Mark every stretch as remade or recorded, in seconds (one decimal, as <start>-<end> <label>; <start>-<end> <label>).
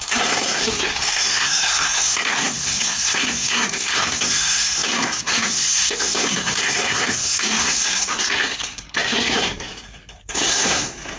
0.0-11.2 remade